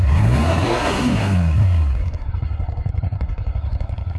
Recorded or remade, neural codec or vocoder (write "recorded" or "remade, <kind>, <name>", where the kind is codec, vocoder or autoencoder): remade, codec, SNAC